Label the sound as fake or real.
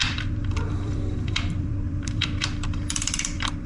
fake